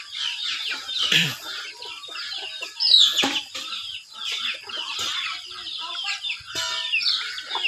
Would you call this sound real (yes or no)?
no